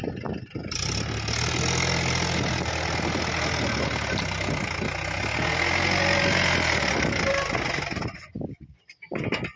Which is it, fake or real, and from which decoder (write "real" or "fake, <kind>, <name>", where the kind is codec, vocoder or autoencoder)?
real